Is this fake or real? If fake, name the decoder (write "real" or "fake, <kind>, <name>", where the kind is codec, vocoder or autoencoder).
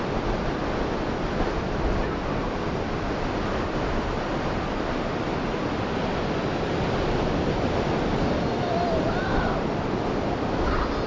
real